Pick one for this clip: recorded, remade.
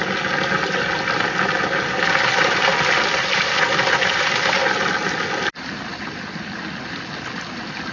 recorded